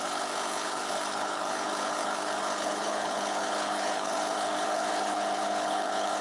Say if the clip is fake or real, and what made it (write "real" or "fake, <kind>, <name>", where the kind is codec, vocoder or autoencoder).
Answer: fake, codec, HILCodec